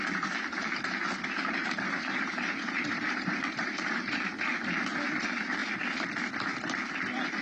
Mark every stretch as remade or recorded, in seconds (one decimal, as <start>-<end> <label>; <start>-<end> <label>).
0.0-1.6 recorded; 1.6-4.5 remade; 4.5-7.4 recorded